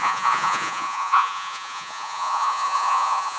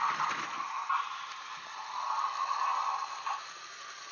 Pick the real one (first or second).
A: second